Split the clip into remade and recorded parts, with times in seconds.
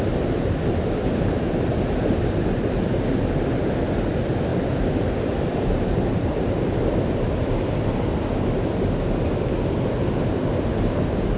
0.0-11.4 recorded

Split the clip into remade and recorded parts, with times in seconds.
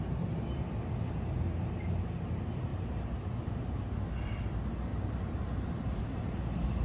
0.0-2.7 recorded; 2.7-3.6 remade; 3.6-4.9 recorded; 4.9-5.7 remade; 5.7-6.8 recorded